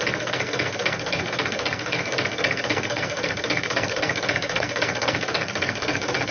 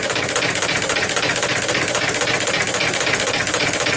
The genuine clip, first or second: second